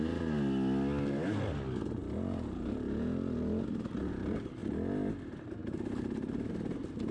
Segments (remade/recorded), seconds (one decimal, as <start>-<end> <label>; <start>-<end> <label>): 0.0-7.1 recorded